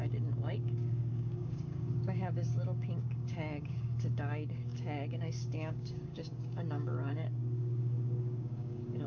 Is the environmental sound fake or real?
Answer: fake